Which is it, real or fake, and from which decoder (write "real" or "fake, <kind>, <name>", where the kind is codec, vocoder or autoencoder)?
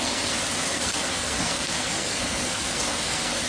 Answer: fake, codec, SNAC